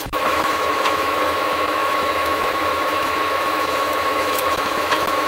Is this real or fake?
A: fake